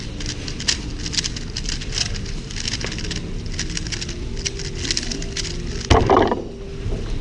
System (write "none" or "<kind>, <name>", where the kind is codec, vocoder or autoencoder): none